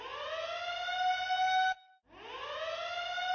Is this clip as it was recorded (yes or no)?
yes